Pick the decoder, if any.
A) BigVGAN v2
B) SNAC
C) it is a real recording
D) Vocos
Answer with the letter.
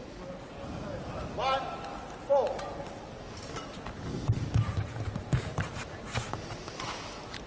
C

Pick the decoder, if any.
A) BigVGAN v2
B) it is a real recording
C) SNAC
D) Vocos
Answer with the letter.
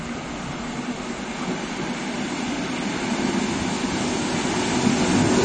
B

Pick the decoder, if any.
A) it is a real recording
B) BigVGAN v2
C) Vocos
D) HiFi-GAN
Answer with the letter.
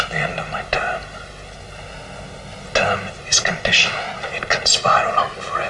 A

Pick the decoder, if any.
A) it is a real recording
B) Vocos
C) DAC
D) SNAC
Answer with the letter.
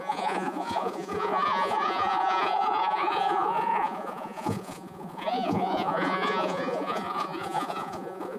B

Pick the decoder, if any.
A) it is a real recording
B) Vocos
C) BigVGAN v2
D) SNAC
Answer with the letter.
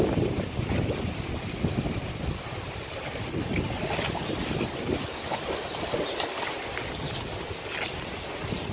A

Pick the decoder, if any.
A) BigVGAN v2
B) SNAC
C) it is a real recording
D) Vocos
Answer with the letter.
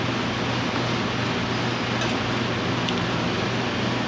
C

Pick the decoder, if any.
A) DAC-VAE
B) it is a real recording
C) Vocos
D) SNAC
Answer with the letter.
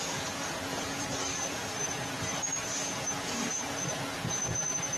C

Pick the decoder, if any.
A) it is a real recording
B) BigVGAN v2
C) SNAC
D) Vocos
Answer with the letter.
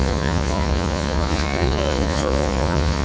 D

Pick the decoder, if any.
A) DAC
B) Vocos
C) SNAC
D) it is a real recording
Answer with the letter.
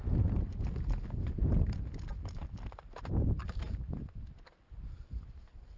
D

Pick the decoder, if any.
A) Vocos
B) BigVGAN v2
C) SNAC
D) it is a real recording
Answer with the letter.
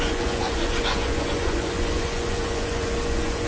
A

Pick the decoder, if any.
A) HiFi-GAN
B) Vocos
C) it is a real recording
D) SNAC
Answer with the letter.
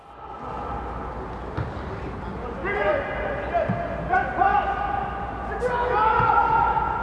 C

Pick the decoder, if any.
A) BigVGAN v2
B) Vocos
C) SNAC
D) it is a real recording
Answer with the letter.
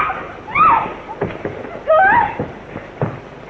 D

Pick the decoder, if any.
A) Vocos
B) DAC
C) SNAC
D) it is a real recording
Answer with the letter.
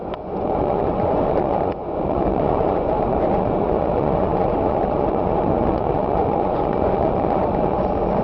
A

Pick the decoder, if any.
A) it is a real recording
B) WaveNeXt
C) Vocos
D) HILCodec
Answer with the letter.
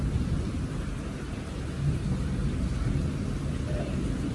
A